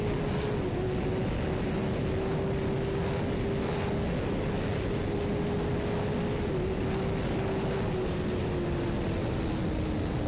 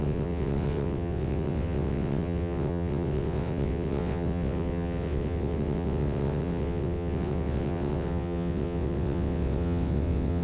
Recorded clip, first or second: first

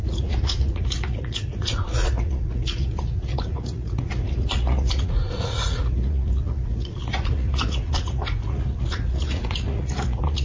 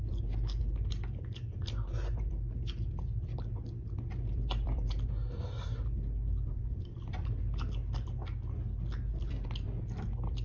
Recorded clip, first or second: second